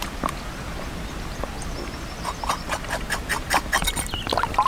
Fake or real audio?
real